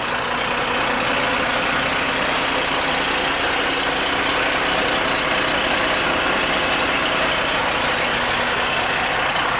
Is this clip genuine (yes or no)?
yes